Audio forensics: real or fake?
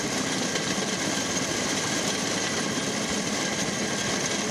real